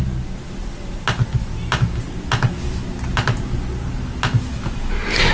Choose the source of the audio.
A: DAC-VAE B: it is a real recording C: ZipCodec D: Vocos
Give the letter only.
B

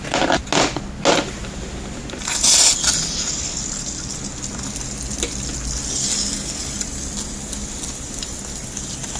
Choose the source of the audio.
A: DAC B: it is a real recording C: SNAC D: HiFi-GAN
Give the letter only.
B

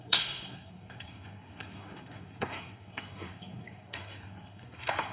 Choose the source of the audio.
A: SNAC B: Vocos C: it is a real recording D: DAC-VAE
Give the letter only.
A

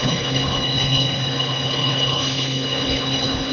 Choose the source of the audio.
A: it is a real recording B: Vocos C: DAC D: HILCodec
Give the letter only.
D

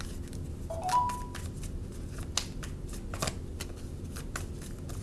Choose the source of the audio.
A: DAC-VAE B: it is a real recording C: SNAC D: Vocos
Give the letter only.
B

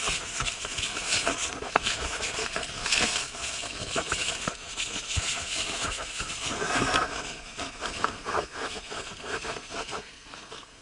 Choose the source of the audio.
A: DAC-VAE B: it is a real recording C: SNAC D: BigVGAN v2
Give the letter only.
C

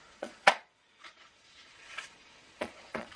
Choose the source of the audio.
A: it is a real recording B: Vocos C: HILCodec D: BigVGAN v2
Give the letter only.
B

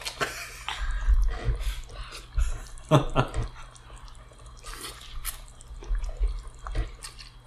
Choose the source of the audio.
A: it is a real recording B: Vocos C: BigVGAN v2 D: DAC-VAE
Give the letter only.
A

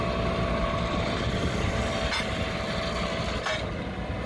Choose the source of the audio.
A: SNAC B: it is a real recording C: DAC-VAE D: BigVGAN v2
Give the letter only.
B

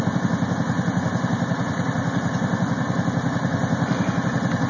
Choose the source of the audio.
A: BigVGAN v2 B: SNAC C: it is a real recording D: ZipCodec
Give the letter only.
C